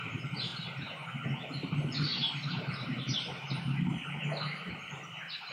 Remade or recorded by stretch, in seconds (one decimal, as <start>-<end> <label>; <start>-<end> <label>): 0.0-0.5 remade; 0.5-1.5 recorded; 1.5-5.5 remade

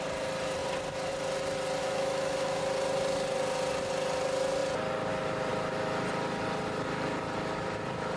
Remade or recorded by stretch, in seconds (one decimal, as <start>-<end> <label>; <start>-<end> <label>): 0.0-1.8 recorded; 1.8-2.6 remade; 2.6-8.2 recorded

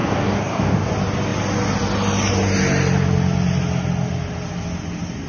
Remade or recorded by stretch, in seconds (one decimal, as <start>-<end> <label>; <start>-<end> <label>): 0.0-0.9 remade; 0.9-5.3 recorded

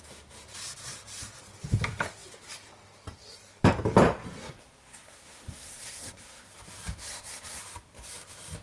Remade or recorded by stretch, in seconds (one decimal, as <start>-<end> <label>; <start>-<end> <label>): 0.0-4.4 recorded; 4.4-6.5 remade; 6.5-7.1 recorded; 7.1-7.6 remade; 7.6-8.6 recorded

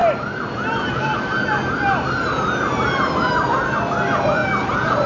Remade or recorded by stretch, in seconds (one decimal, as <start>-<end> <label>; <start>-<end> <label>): 0.0-0.6 recorded; 0.6-1.3 remade; 1.3-2.6 recorded; 2.6-4.4 remade; 4.4-5.1 recorded

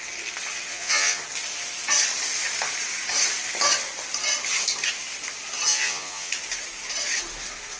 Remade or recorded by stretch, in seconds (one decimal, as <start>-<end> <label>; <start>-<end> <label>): 0.0-0.7 recorded; 0.7-1.2 remade; 1.2-5.7 recorded; 5.7-6.3 remade; 6.3-7.8 recorded

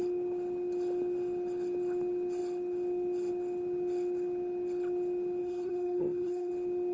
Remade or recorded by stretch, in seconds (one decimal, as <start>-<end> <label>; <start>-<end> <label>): 0.0-5.4 recorded; 5.4-6.5 remade; 6.5-6.9 recorded